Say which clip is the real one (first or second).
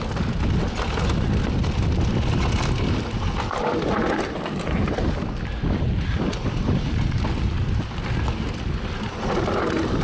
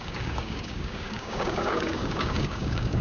first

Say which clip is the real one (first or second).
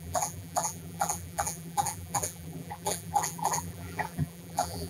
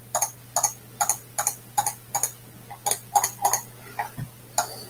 second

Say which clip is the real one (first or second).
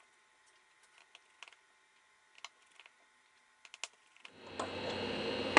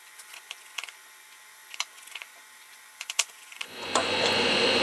first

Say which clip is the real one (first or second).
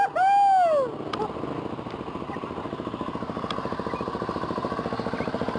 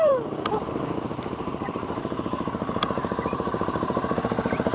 first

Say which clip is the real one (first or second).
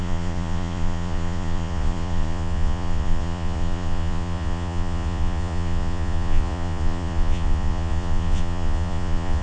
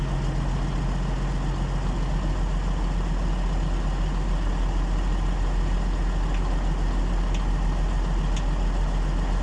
second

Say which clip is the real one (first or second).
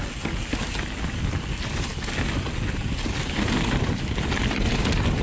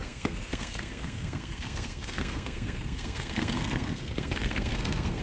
first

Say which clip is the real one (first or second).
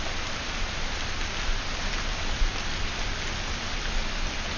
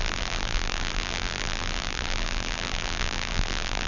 first